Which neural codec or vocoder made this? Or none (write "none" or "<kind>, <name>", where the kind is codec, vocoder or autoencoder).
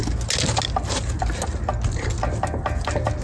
none